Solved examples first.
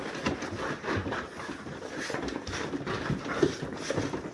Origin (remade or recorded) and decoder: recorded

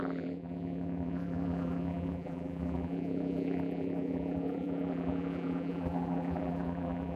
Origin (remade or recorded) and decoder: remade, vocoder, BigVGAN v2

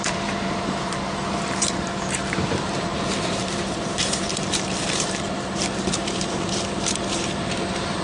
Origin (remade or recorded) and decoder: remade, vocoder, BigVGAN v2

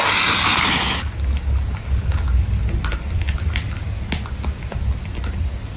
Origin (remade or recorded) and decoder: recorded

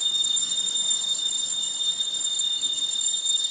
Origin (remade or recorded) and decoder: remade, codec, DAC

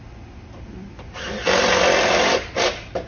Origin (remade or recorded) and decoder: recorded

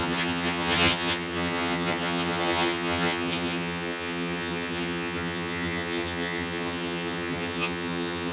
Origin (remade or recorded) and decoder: remade, vocoder, HiFi-GAN